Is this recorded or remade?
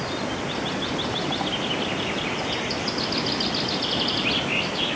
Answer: recorded